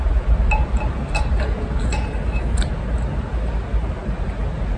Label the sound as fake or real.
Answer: real